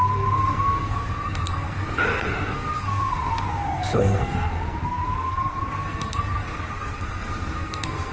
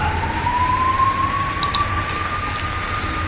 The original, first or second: second